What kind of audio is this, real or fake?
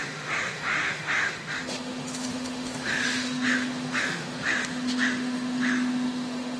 fake